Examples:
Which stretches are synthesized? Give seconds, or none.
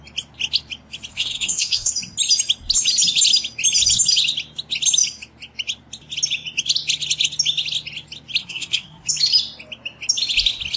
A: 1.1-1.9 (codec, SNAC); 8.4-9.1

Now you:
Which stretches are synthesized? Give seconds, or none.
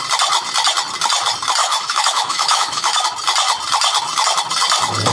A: 1.6-3.0 (autoencoder, DAC-VAE)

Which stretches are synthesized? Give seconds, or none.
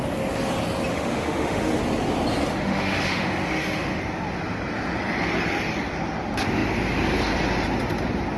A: 0.9-1.8 (autoencoder, DAC-VAE); 2.5-4.0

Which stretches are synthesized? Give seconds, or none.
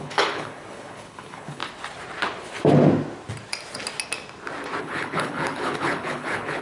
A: 0.0-1.6 (codec, HILCodec); 4.8-6.6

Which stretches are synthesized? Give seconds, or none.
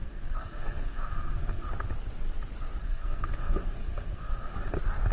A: 0.0-1.7 (codec, SNAC); 2.8-4.5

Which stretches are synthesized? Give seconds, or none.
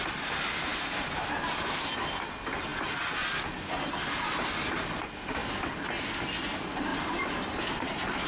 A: none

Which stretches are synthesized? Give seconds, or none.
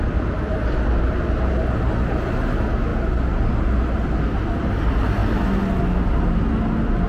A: none